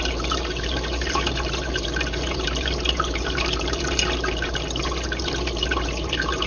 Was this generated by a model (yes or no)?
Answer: yes